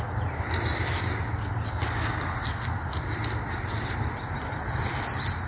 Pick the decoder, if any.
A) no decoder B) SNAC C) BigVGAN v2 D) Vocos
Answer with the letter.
A